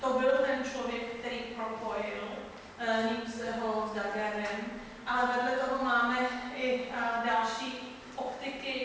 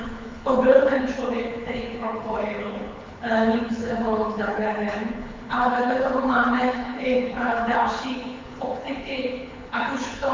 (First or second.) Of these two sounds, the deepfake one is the second